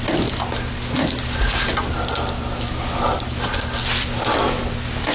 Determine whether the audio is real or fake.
real